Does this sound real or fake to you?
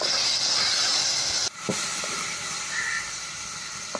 real